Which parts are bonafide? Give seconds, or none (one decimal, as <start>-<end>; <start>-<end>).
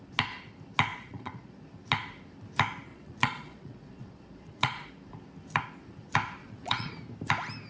0.0-0.9; 1.6-2.9; 4.9-6.4; 6.9-7.7